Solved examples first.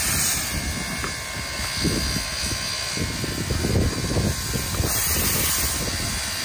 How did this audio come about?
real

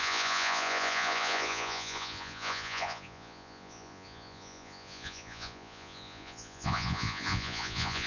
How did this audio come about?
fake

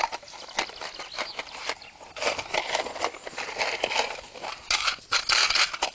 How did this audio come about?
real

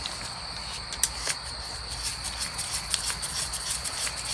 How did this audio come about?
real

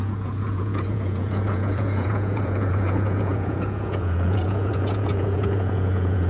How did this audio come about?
fake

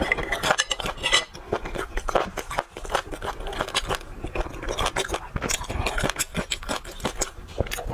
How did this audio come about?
real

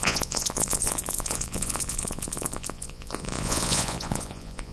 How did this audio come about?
fake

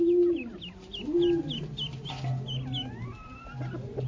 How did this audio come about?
real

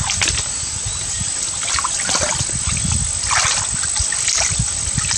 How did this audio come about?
real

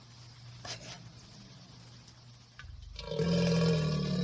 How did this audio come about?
real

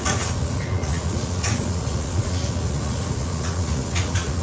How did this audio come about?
fake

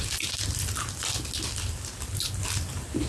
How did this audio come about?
real